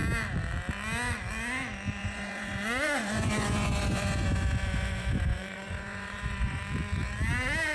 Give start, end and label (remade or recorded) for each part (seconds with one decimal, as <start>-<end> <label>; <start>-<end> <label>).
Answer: 0.0-2.0 recorded; 2.0-6.6 remade; 6.6-7.7 recorded